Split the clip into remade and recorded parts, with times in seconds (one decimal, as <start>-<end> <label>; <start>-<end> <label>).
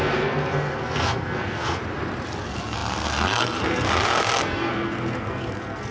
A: 0.0-1.8 remade; 1.8-2.4 recorded; 2.4-5.9 remade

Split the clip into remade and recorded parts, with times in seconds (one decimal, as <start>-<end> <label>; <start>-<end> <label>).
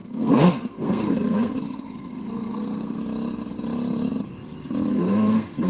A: 0.0-3.0 remade; 3.0-4.9 recorded; 4.9-5.7 remade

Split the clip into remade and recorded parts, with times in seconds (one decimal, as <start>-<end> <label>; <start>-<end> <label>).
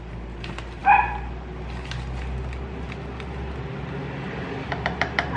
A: 0.0-5.4 recorded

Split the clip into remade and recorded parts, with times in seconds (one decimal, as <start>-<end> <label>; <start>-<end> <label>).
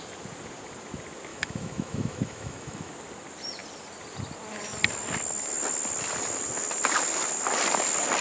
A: 0.0-1.3 recorded; 1.3-2.9 remade; 2.9-8.2 recorded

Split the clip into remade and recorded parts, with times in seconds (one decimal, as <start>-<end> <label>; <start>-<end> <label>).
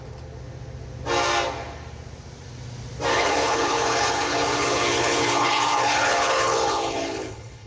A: 0.0-3.1 recorded; 3.1-7.7 remade